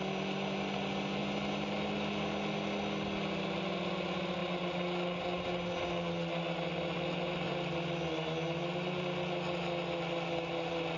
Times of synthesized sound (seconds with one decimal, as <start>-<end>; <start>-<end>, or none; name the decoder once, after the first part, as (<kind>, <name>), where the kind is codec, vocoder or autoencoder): none